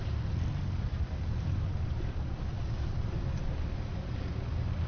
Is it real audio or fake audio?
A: fake